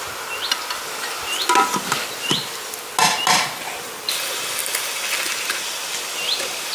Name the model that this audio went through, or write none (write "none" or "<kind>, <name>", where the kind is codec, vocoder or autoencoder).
none